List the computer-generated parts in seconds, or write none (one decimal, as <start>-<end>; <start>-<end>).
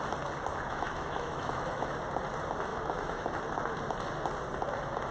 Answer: 0.5-2.0; 2.7-3.4